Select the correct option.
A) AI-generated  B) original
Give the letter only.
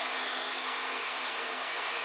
A